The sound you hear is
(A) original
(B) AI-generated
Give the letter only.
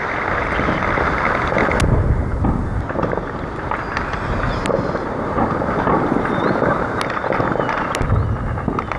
A